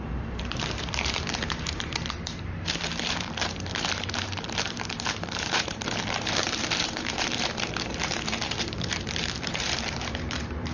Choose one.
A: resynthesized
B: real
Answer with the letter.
A